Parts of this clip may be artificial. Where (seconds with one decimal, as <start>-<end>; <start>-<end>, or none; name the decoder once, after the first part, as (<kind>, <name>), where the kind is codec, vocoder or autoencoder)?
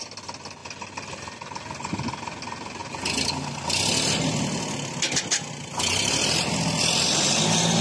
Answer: none